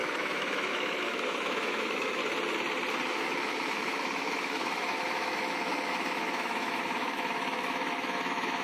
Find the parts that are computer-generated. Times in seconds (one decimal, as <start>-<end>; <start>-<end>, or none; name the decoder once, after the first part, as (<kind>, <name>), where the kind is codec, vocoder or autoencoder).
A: 0.0-2.2 (autoencoder, DAC-VAE); 3.1-8.6